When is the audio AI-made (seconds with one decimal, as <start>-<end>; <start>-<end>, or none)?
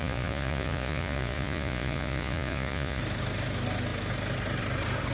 0.0-3.0